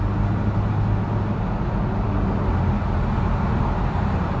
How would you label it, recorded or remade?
recorded